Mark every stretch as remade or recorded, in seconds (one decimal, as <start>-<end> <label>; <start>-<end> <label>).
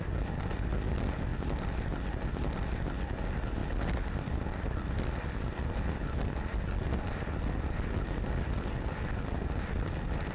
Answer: 0.0-10.3 recorded